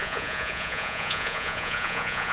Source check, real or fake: fake